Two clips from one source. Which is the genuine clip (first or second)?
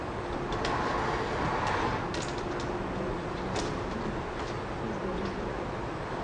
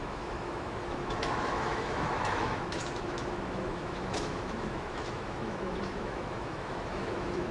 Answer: first